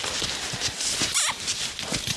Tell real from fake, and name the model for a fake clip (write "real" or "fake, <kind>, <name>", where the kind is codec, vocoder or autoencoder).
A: real